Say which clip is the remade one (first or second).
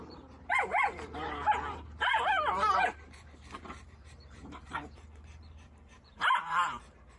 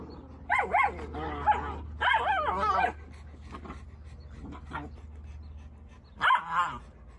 first